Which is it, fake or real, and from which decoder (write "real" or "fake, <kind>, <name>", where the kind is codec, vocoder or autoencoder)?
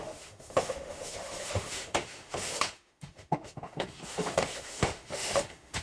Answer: fake, autoencoder, DAC-VAE